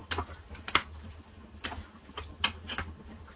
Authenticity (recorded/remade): recorded